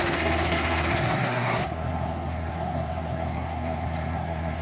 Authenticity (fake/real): fake